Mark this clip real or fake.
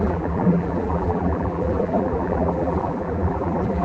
fake